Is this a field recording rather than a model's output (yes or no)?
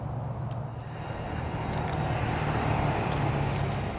yes